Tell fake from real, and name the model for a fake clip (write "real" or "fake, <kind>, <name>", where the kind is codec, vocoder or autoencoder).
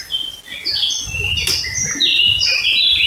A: real